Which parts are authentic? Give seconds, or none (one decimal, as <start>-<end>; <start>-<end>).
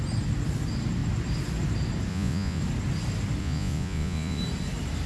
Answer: 0.0-2.1; 2.6-3.4; 4.4-5.1